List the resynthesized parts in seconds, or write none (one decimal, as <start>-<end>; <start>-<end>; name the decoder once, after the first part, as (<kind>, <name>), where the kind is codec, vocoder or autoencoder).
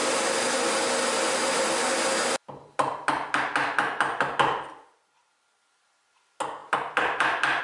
none